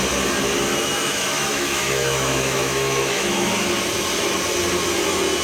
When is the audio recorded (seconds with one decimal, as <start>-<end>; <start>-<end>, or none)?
0.0-0.7; 3.5-5.4